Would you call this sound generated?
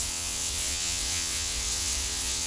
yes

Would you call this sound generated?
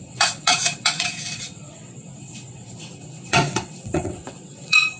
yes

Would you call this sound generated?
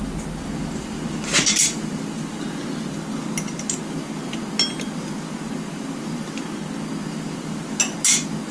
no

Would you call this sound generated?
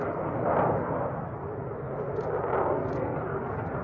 no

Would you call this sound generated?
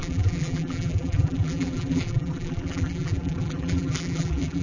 yes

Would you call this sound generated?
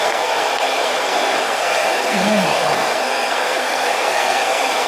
yes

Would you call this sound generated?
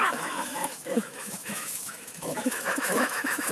yes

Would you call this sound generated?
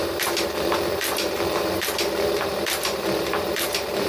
yes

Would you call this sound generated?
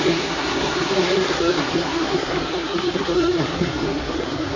yes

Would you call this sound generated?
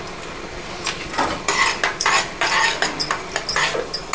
no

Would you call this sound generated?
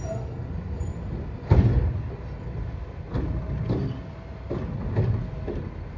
no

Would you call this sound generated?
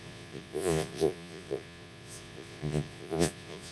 yes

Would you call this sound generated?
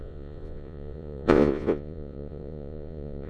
yes